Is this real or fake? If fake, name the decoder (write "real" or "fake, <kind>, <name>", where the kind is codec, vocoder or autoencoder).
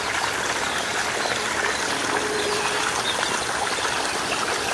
fake, vocoder, BigVGAN v2